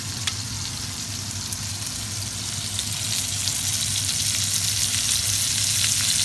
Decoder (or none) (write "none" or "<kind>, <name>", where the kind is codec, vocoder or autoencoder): none